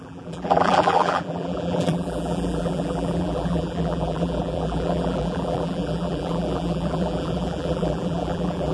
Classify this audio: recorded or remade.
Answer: remade